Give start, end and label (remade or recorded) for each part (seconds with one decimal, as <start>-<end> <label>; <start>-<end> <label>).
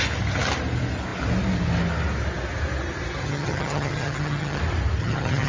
0.0-3.2 recorded; 3.2-4.6 remade; 4.6-5.0 recorded; 5.0-5.5 remade